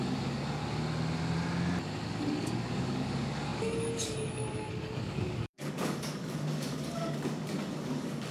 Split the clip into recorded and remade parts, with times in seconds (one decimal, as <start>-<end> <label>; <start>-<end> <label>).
0.0-0.6 remade; 0.6-2.1 recorded; 2.1-8.3 remade